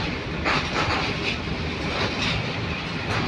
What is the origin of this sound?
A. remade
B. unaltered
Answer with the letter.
B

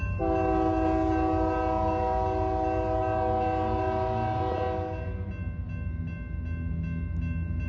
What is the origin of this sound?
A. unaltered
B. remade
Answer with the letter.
A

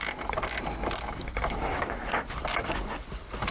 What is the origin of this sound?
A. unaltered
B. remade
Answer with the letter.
A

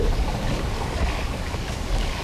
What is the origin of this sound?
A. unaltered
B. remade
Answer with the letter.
B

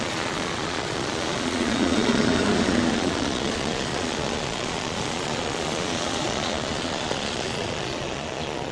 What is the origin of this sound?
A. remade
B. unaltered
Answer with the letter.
A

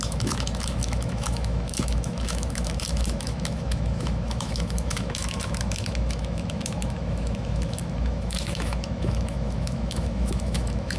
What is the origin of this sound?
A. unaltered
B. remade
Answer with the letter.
B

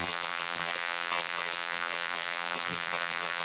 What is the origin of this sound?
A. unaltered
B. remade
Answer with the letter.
B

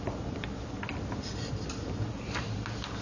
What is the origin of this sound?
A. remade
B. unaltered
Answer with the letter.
A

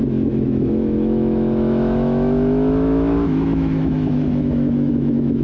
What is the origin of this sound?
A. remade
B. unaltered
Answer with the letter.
A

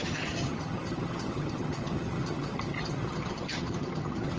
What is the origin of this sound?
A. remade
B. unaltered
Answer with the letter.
A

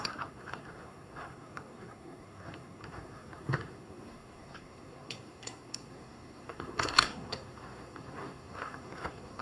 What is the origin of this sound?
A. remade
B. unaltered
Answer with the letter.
A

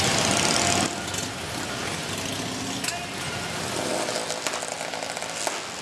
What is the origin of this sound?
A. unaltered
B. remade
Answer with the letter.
A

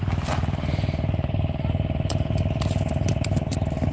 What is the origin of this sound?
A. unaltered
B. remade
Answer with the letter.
A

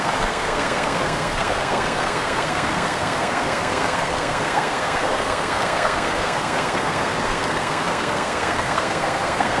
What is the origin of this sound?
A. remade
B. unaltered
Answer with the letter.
A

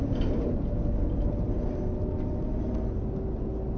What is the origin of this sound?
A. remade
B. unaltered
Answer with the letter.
B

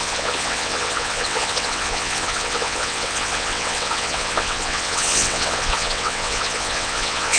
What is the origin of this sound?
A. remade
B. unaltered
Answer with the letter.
A